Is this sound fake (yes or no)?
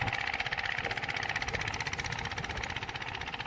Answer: no